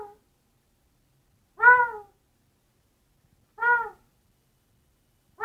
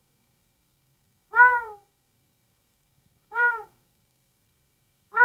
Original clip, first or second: first